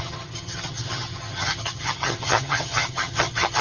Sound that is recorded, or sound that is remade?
remade